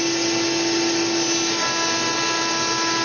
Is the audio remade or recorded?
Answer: recorded